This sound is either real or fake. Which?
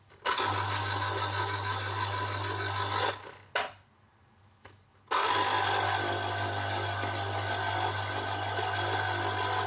real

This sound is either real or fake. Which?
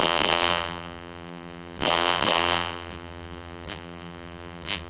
fake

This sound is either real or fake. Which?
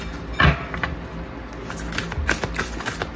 real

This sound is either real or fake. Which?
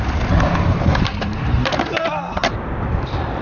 fake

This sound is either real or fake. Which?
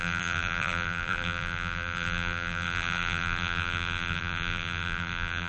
fake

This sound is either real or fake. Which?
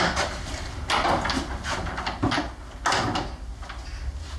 real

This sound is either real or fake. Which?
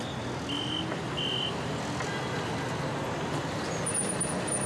real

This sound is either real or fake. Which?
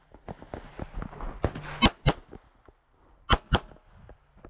real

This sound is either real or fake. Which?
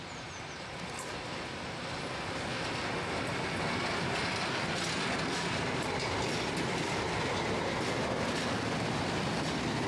real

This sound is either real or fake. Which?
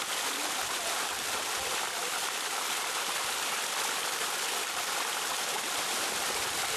fake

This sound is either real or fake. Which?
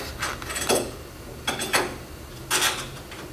real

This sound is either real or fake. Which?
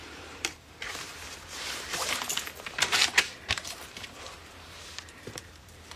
fake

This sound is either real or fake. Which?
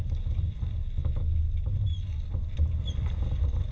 real